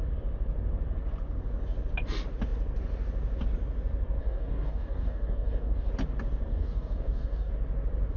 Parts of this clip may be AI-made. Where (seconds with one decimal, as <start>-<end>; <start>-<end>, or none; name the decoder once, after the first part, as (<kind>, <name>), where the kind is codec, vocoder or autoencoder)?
4.2-5.9 (codec, DAC); 6.5-7.5